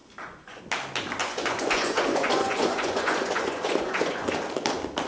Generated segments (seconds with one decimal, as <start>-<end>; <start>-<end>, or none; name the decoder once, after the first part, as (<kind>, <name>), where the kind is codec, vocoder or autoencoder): 0.0-0.6 (vocoder, Vocos); 1.2-4.3